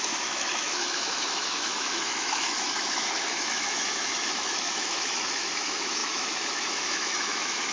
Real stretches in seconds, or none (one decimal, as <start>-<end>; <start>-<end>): none